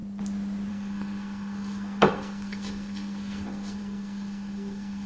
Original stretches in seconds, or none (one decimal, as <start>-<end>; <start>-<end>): 0.0-0.7